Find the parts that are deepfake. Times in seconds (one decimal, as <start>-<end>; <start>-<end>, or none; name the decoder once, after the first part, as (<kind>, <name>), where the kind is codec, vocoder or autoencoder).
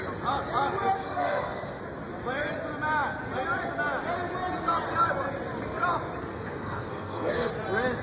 1.0-1.8 (codec, SNAC); 6.3-7.5